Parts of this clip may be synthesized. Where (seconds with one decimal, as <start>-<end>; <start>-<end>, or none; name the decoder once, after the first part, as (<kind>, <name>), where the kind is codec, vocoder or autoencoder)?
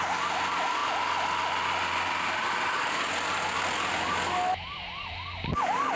none